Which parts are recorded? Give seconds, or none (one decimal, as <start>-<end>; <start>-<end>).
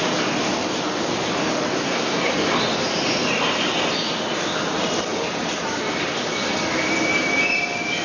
0.0-1.8; 2.3-8.0